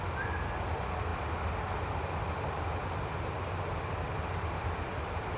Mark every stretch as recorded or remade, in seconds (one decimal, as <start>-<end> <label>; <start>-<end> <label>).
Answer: 0.0-5.4 recorded